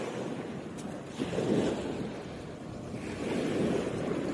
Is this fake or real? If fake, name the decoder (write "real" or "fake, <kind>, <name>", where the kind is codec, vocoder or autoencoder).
real